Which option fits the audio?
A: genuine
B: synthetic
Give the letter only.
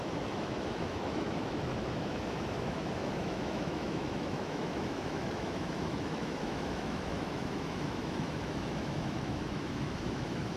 B